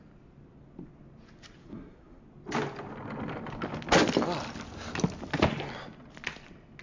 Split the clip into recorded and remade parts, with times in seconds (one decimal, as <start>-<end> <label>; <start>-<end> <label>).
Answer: 0.0-1.6 recorded; 1.6-2.2 remade; 2.2-6.8 recorded